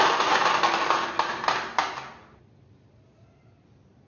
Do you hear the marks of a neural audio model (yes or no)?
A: no